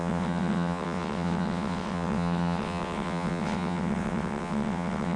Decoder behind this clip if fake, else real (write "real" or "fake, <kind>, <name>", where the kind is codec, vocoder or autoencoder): fake, vocoder, WaveNeXt